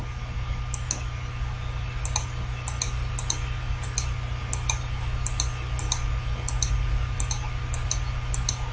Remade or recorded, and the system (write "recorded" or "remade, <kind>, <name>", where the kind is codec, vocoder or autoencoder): recorded